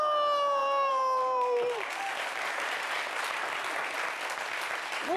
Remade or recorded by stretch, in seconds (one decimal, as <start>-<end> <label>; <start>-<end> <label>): 0.0-0.6 recorded; 0.6-2.9 remade; 2.9-5.2 recorded

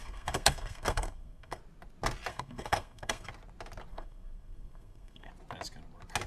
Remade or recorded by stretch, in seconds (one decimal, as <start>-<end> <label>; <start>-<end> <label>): 0.0-1.6 remade; 1.6-2.3 recorded; 2.3-3.3 remade; 3.3-3.9 recorded; 3.9-5.3 remade; 5.3-6.3 recorded

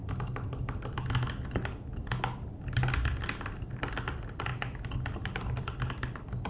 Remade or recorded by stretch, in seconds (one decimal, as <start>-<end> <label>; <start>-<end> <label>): 0.0-6.5 recorded

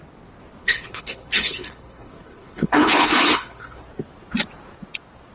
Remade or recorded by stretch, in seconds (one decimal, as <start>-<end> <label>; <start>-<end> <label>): 0.0-0.6 recorded; 0.6-3.8 remade; 3.8-5.3 recorded

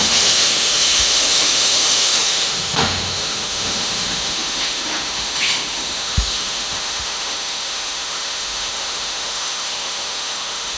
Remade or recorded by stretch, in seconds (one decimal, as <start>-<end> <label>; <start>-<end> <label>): 0.0-10.8 remade

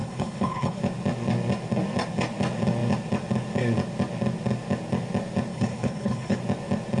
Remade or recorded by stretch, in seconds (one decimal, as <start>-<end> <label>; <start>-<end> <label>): 0.0-0.8 remade; 0.8-5.5 recorded; 5.5-6.4 remade; 6.4-7.0 recorded

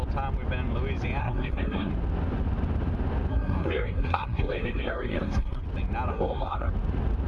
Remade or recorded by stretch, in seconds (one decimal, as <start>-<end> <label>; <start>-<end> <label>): 0.0-1.2 recorded; 1.2-1.9 remade; 1.9-3.3 recorded; 3.3-5.6 remade; 5.6-6.1 recorded; 6.1-6.7 remade; 6.7-7.3 recorded